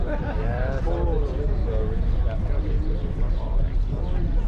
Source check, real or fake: real